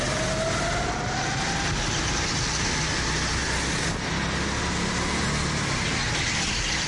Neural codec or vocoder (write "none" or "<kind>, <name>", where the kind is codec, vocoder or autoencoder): none